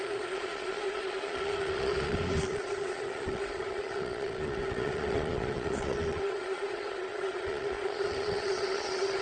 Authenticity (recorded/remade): remade